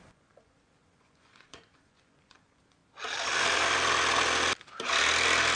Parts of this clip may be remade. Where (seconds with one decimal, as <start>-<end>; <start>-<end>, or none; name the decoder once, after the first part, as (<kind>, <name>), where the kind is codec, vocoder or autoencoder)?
0.0-2.8 (vocoder, Vocos)